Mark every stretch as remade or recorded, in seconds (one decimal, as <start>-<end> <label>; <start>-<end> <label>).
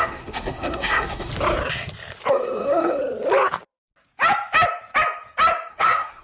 0.0-1.3 remade; 1.3-2.3 recorded; 2.3-3.0 remade; 3.0-5.7 recorded; 5.7-6.2 remade